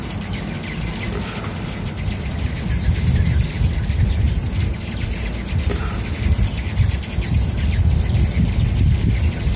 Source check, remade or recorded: recorded